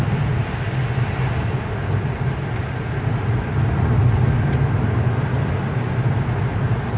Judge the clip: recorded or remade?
recorded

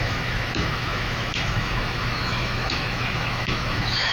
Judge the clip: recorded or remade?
remade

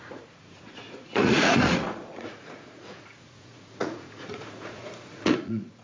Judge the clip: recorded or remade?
remade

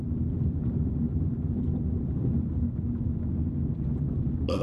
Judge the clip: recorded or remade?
recorded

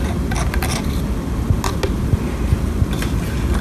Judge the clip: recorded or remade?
recorded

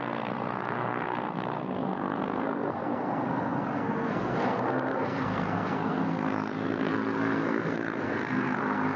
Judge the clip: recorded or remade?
remade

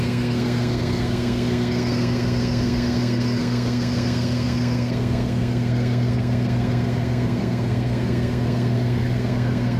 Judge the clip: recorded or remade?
remade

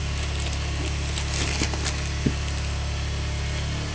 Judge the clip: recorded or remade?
recorded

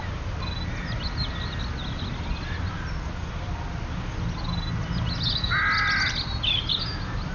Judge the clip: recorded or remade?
recorded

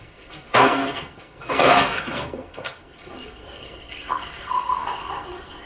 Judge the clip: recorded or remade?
remade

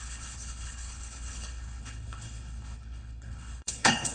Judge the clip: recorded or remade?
remade